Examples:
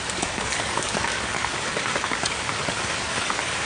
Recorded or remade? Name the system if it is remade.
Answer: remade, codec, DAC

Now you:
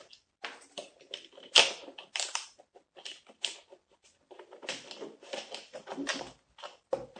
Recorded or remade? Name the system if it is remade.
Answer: recorded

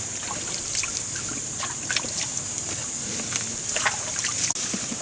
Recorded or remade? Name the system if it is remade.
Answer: recorded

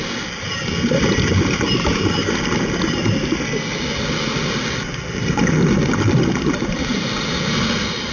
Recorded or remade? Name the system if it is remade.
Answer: recorded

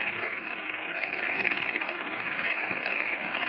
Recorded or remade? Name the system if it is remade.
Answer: remade, codec, DAC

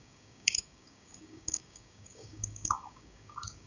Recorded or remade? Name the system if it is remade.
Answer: remade, codec, DAC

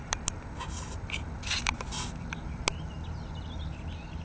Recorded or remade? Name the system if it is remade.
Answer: recorded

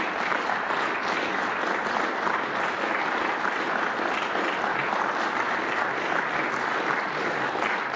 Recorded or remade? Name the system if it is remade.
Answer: recorded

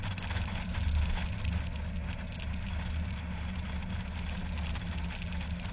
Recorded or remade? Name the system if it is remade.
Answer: recorded